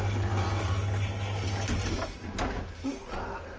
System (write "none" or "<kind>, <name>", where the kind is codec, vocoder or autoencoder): none